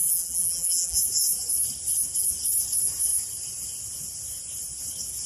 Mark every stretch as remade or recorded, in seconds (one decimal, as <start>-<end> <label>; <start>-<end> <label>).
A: 0.0-1.0 remade; 1.0-5.3 recorded